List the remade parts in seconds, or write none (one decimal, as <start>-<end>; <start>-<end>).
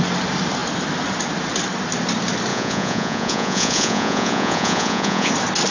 2.5-5.3